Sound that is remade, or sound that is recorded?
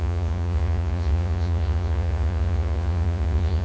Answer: remade